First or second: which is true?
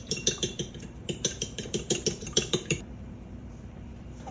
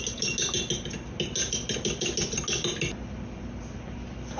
second